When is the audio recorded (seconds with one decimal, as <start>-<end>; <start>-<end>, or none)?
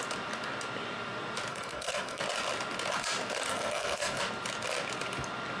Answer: 0.0-1.5; 2.2-3.5; 4.2-5.6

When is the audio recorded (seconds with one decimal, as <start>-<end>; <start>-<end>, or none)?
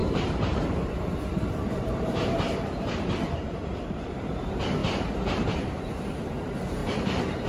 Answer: 0.9-1.3; 4.3-4.8; 5.9-6.8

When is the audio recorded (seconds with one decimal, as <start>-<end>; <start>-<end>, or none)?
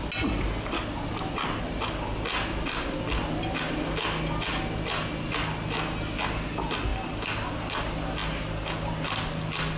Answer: 0.0-9.8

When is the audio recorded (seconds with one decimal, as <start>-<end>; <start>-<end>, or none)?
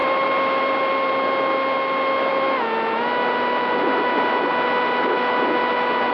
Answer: 1.1-6.1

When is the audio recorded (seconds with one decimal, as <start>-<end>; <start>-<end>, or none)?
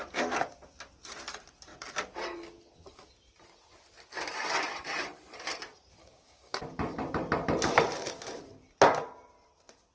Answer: 0.0-6.0; 6.6-9.9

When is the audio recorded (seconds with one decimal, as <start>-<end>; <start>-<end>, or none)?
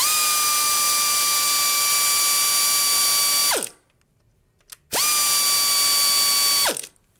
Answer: 0.0-7.2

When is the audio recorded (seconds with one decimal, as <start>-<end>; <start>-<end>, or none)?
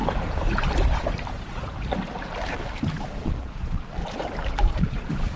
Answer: 0.0-3.2; 4.0-4.8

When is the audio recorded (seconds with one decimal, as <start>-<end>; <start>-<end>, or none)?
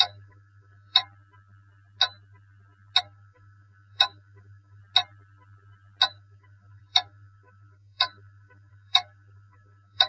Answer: 1.0-3.0; 4.8-6.1